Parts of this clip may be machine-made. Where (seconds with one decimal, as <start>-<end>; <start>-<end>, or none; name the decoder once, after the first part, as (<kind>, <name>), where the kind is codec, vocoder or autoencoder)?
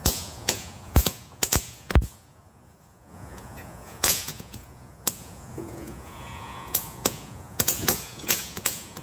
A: 0.0-9.0 (vocoder, Vocos)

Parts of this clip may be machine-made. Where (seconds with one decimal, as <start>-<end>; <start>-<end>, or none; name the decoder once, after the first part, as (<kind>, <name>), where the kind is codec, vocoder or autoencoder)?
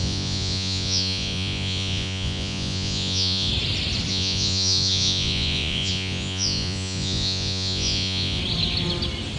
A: 0.0-3.5 (vocoder, Vocos); 4.1-8.4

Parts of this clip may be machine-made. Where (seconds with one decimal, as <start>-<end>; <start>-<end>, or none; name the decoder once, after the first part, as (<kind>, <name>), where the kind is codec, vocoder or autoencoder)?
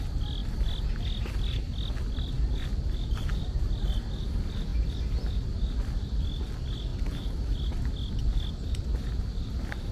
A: none